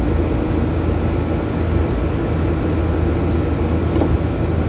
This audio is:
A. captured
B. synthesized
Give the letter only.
A